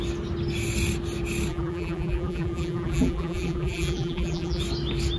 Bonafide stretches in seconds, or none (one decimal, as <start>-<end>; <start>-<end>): 0.0-1.5; 4.6-5.2